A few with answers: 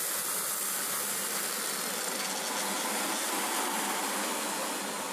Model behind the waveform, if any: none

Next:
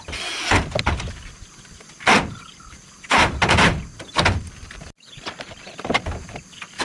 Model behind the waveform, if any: none